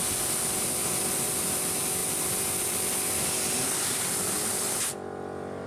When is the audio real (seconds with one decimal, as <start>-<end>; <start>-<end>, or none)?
none